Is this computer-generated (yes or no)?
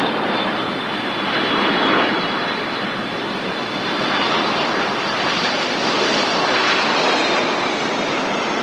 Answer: yes